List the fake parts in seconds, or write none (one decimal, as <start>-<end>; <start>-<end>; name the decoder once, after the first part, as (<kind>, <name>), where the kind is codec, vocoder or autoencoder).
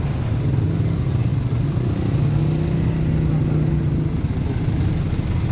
none